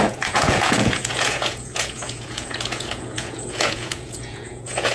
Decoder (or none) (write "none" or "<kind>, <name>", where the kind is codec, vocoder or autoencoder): vocoder, Vocos